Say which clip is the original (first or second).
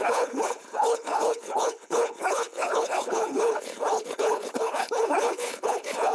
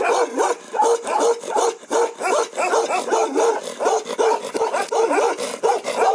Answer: second